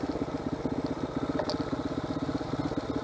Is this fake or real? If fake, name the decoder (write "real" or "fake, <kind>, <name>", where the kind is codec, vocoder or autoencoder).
real